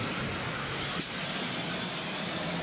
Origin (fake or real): real